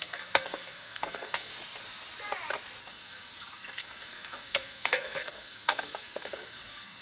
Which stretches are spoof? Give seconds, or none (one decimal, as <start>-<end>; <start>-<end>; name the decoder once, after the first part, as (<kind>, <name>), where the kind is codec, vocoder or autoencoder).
0.0-1.5 (codec, SNAC); 2.8-7.0